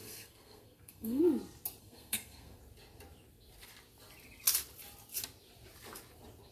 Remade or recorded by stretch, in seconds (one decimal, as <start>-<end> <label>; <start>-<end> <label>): 0.0-1.2 remade; 1.2-1.8 recorded; 1.8-2.6 remade; 2.6-6.5 recorded